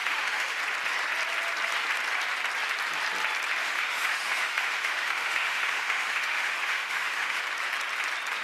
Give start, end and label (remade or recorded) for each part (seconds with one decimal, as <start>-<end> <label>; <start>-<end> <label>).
0.0-0.6 remade; 0.6-3.6 recorded; 3.6-7.4 remade; 7.4-8.4 recorded